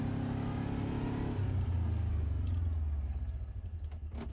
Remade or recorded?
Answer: recorded